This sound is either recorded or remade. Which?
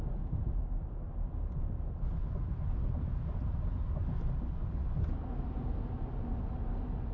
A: recorded